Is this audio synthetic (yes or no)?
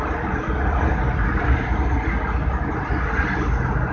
no